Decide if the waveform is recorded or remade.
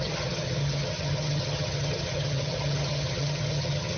remade